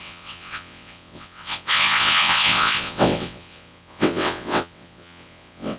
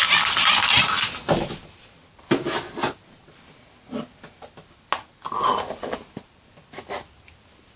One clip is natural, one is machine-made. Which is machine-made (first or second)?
first